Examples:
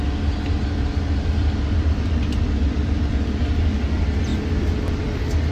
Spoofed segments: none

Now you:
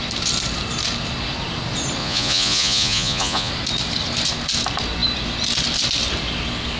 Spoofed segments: 2.0-3.5 (vocoder, Vocos)